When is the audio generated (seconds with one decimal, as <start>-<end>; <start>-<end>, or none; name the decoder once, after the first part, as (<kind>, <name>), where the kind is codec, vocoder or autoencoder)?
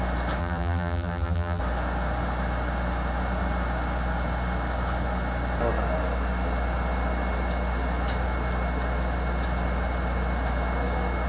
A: 0.4-1.6 (vocoder, BigVGAN v2)